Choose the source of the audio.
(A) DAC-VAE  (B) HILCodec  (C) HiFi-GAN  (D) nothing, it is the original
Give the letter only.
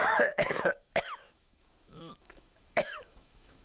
A